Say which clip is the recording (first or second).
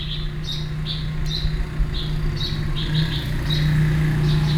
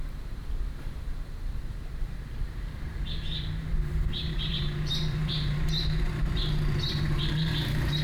first